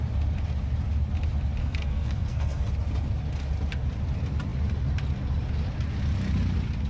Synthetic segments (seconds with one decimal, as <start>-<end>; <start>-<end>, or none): 1.6-2.7